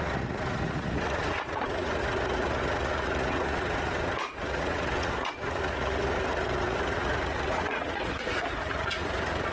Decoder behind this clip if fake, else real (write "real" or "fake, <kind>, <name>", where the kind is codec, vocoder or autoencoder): fake, vocoder, Vocos